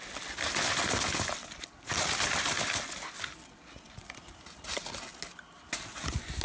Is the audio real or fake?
real